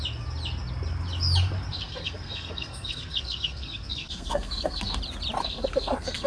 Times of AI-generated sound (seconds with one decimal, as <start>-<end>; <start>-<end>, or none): 1.7-5.0; 5.4-6.3